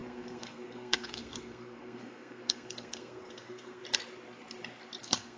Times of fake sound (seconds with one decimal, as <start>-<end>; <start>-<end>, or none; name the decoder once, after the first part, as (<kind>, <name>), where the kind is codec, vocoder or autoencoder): 0.0-3.8 (codec, SNAC); 5.0-5.4